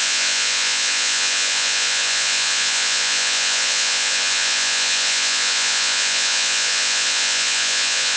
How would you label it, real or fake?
fake